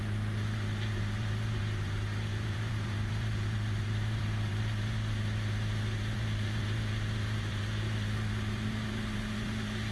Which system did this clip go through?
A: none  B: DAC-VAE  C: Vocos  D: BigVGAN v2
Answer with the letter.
D